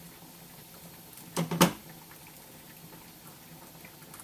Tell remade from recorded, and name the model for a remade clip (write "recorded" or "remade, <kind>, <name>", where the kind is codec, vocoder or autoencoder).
recorded